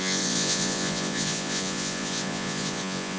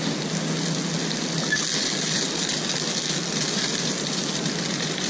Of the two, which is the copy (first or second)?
first